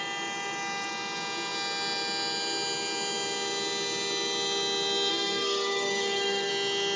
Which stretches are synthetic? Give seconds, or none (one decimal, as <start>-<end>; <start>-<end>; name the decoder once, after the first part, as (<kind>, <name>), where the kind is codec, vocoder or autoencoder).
5.1-6.5 (codec, SNAC)